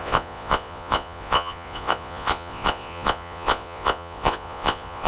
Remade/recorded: remade